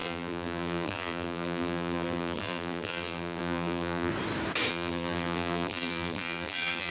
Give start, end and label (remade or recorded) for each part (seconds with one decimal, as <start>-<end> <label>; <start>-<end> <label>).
0.0-4.1 remade; 4.1-4.7 recorded; 4.7-6.9 remade